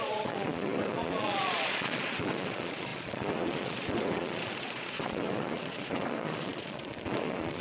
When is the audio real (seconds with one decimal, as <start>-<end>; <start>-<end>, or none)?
none